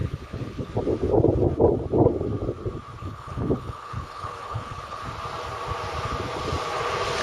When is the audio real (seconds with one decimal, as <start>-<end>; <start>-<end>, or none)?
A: 0.7-3.0; 5.0-7.2

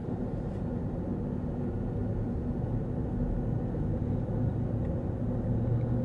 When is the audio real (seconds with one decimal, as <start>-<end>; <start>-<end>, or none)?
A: 0.9-2.0; 2.5-6.0

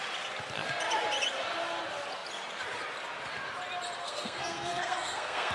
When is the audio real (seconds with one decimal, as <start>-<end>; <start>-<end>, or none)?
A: 0.0-4.0

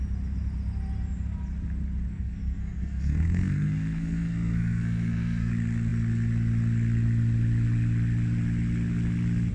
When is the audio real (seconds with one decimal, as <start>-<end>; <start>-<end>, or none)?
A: 0.0-2.1; 5.5-9.5

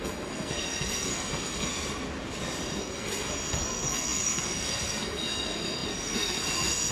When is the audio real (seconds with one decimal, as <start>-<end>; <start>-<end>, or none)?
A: 1.7-2.8

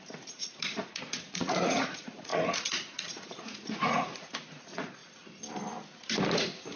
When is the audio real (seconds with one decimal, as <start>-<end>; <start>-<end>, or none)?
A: 5.0-6.3

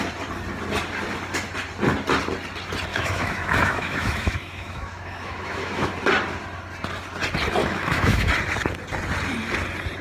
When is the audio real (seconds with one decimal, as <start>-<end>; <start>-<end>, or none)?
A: 0.0-2.9; 5.9-7.6; 8.3-10.0